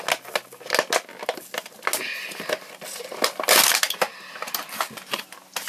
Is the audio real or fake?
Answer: real